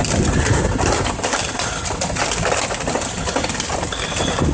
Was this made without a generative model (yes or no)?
yes